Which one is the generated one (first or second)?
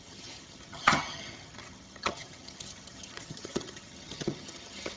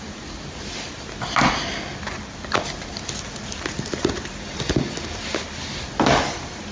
first